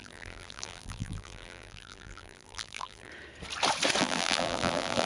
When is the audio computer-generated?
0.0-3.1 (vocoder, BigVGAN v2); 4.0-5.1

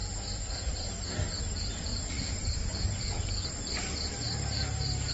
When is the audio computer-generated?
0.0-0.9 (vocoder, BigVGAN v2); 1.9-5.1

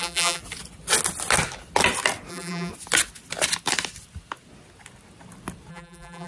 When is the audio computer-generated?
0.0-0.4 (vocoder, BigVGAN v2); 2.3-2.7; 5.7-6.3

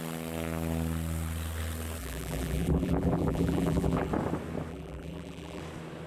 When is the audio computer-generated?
2.0-4.1 (vocoder, BigVGAN v2); 4.7-5.6